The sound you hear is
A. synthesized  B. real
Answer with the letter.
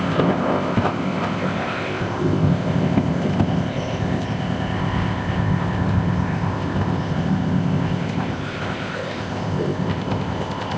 A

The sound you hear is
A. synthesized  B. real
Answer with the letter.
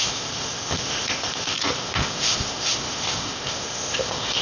A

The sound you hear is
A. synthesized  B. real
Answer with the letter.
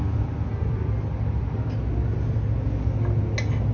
B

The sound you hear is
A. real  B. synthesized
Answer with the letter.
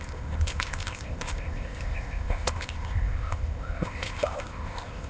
B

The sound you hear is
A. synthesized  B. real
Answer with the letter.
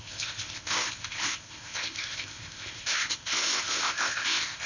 A